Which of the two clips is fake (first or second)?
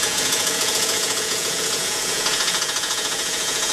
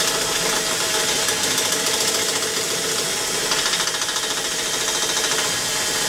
first